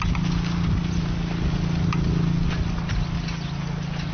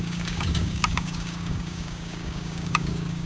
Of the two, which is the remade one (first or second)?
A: second